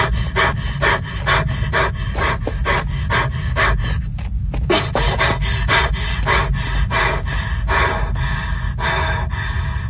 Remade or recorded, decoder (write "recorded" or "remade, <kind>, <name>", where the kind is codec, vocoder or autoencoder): recorded